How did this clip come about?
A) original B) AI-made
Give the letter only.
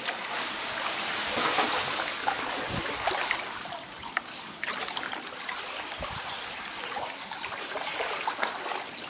A